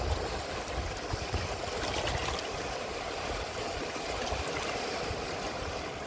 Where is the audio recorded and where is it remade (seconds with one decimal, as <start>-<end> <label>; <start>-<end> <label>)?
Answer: 0.0-2.2 recorded; 2.2-3.5 remade; 3.5-6.1 recorded